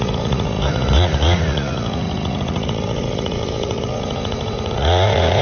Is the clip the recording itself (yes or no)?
no